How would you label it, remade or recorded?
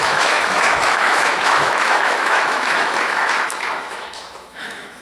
remade